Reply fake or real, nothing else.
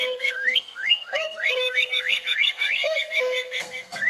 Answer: fake